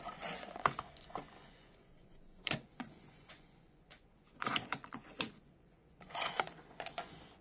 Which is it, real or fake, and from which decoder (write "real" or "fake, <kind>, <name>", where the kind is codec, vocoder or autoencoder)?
fake, vocoder, Vocos